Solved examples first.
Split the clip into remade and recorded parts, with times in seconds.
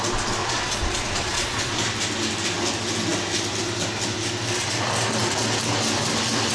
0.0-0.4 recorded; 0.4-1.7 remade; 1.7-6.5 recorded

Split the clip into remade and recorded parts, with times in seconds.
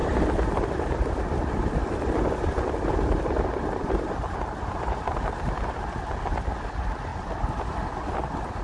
0.0-8.6 recorded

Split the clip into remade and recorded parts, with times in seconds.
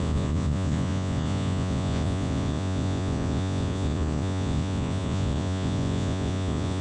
0.0-6.8 remade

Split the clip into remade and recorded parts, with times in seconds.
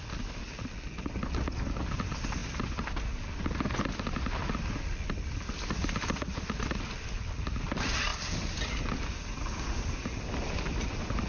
0.0-11.3 recorded